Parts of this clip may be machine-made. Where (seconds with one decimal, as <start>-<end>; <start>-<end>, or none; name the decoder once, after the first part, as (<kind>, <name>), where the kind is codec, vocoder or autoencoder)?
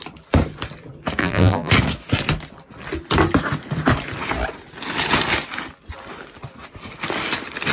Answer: 1.2-1.7 (vocoder, BigVGAN v2)